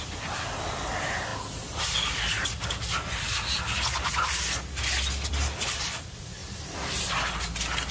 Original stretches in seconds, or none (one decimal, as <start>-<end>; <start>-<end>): 0.0-6.4; 7.1-7.9